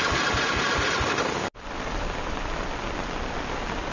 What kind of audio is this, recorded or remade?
recorded